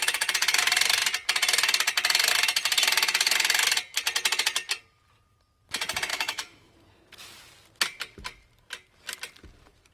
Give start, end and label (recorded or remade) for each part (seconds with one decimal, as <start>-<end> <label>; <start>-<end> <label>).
0.0-6.1 recorded; 6.1-6.7 remade; 6.7-9.9 recorded